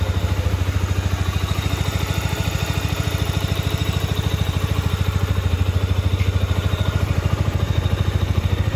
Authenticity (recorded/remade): remade